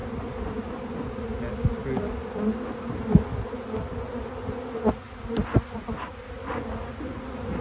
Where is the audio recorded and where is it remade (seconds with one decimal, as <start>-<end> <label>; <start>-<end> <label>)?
0.0-7.6 recorded